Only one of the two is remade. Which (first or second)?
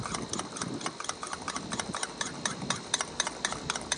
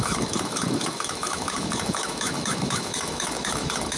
second